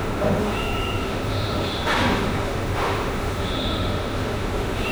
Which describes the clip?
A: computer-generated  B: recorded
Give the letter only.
A